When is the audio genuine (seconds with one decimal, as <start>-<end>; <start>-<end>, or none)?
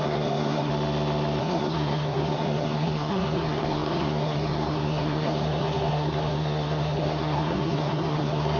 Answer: 0.7-1.4